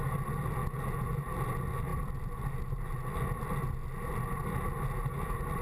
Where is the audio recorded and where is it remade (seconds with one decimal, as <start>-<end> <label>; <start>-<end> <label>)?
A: 0.0-5.6 recorded